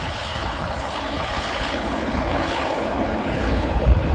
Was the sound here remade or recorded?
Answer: remade